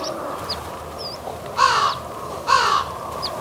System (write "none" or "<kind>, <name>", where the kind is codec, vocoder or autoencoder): vocoder, BigVGAN v2